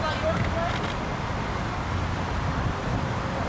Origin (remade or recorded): recorded